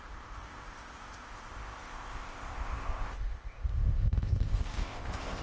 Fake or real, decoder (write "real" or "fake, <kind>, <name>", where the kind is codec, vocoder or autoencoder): fake, codec, ZipCodec